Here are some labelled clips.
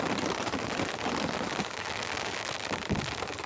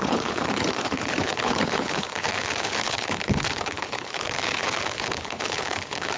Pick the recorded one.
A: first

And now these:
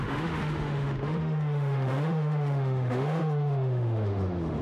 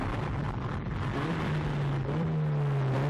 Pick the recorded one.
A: second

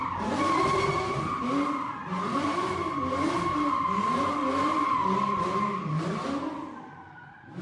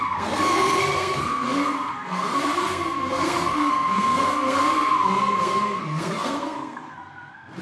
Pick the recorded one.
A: first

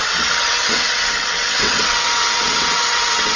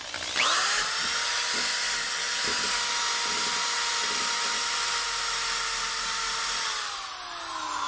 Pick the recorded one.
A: second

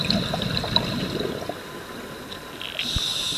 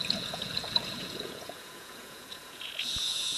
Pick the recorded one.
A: first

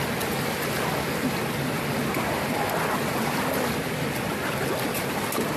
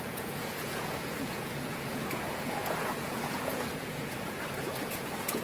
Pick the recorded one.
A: first